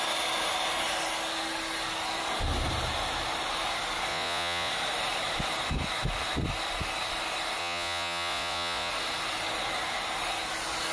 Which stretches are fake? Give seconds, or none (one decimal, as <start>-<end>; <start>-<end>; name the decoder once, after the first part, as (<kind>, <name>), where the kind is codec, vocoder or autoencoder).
4.1-4.7 (vocoder, Vocos); 7.6-8.9